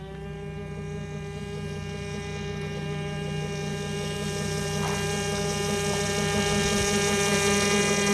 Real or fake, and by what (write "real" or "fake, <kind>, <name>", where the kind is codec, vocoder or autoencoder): real